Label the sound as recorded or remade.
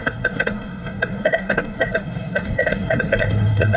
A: remade